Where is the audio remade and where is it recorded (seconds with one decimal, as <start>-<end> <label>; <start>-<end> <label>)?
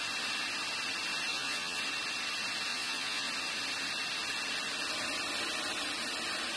0.0-1.3 recorded; 1.3-1.8 remade; 1.8-2.7 recorded; 2.7-3.3 remade; 3.3-6.6 recorded